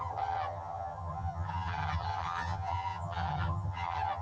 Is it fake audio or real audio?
fake